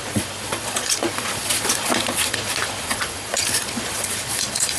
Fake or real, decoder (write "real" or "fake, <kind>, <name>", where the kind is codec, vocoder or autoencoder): fake, vocoder, Vocos